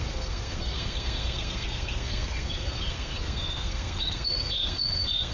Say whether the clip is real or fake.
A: fake